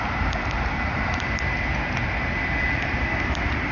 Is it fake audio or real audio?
real